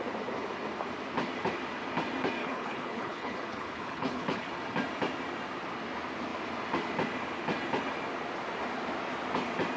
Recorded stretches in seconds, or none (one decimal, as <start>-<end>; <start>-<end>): 0.0-2.4; 4.5-9.8

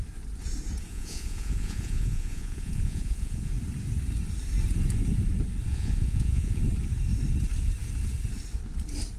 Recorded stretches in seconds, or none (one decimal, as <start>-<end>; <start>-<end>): 0.0-0.9; 3.5-5.7; 6.6-9.2